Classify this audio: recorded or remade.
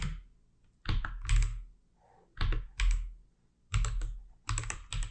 recorded